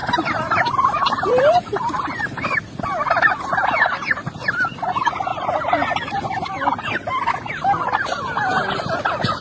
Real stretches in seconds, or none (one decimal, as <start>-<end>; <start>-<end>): 3.2-9.4